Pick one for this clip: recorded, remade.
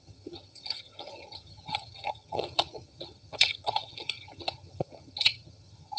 remade